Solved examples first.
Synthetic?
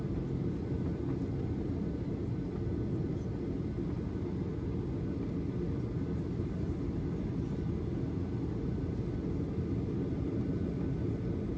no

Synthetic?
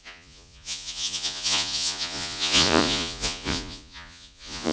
yes